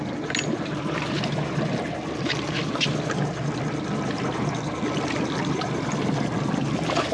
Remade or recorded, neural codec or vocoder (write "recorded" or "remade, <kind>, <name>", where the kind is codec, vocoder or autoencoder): recorded